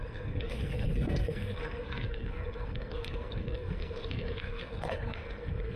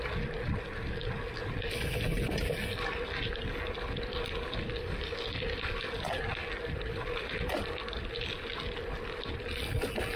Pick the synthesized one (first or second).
first